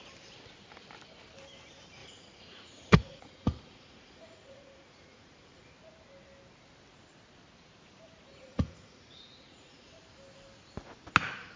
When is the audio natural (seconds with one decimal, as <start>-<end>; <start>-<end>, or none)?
0.0-2.0; 5.7-8.3; 10.0-11.6